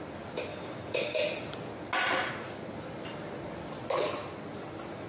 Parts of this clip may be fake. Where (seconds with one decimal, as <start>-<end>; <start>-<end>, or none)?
0.5-1.2